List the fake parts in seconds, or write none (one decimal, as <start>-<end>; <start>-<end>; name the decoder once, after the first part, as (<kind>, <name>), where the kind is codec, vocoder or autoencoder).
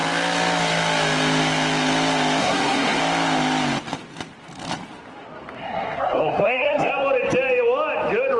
2.4-3.0 (codec, SNAC); 5.6-6.9